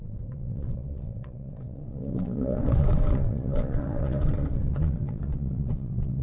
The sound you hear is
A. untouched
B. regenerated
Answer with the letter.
B